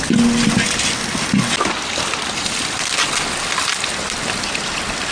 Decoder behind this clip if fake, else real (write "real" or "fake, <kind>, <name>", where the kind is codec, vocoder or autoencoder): real